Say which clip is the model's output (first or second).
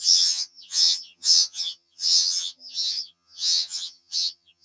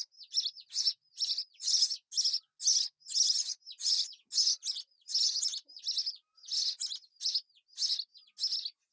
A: first